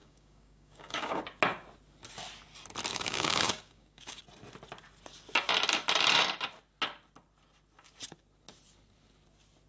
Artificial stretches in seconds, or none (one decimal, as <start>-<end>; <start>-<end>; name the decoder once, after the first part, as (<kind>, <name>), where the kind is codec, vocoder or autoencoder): 0.0-1.2 (codec, DAC); 2.9-4.2